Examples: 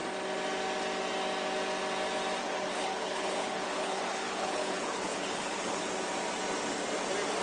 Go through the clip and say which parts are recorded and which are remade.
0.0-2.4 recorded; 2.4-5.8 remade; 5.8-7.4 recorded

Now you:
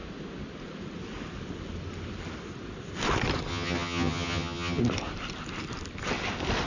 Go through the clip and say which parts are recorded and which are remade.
0.0-3.5 recorded; 3.5-4.8 remade; 4.8-6.7 recorded